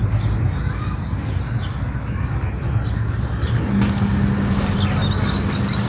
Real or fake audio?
real